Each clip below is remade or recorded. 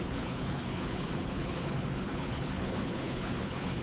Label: remade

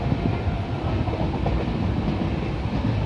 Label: recorded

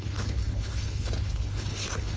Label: remade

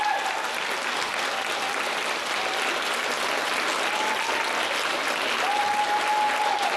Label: recorded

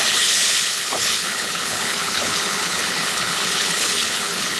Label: remade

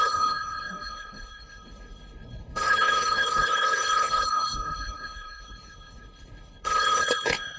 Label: remade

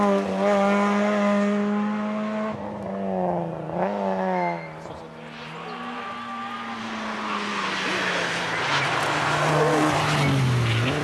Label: recorded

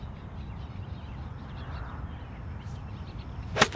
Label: recorded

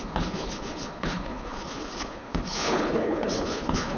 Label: remade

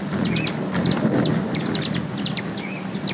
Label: recorded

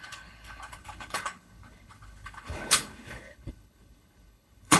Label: remade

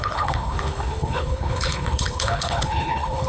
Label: remade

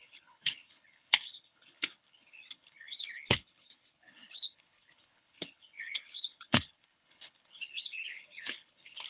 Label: remade